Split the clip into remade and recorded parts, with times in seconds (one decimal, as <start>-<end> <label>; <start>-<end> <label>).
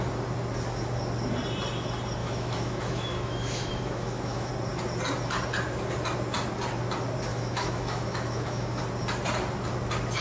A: 0.0-2.2 recorded; 2.2-4.5 remade; 4.5-7.3 recorded; 7.3-8.8 remade; 8.8-10.2 recorded